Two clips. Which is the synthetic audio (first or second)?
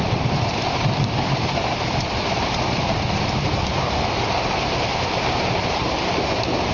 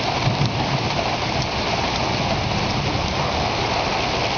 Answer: first